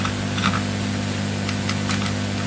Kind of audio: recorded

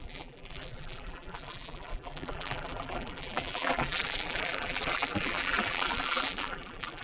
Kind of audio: remade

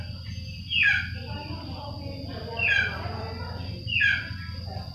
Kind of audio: recorded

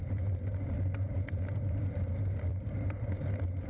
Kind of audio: remade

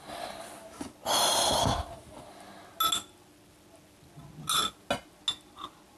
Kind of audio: recorded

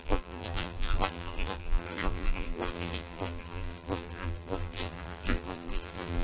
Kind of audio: remade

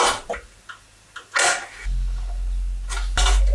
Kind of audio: recorded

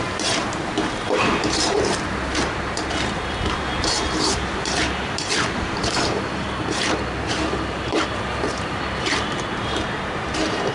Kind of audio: remade